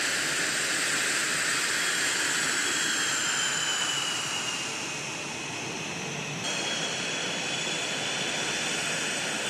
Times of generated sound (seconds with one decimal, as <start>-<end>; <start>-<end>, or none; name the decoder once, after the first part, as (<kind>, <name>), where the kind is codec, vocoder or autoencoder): none